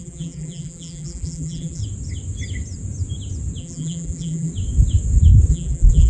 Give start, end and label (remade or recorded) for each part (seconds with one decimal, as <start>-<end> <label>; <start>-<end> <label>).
0.0-1.8 remade; 1.8-3.6 recorded; 3.6-4.5 remade; 4.5-5.5 recorded; 5.5-6.1 remade